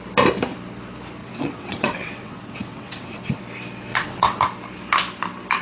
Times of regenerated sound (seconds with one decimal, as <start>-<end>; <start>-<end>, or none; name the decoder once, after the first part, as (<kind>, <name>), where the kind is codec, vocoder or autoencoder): 1.2-3.4 (vocoder, WaveNeXt); 3.9-4.4